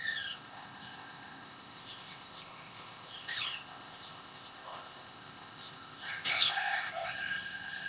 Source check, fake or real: fake